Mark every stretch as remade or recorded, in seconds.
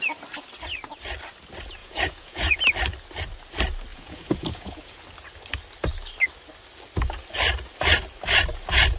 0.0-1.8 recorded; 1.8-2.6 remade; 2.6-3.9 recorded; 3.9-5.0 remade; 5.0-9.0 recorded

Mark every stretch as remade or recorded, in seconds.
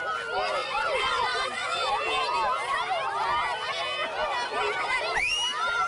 0.0-0.6 recorded; 0.6-1.9 remade; 1.9-5.9 recorded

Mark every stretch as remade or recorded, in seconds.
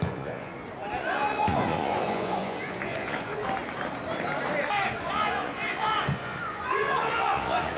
0.0-0.5 remade; 0.5-1.0 recorded; 1.0-3.4 remade; 3.4-5.0 recorded; 5.0-7.8 remade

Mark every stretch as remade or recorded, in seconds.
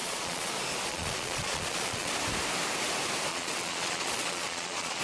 0.0-0.5 remade; 0.5-0.9 recorded; 0.9-2.1 remade; 2.1-3.3 recorded; 3.3-5.0 remade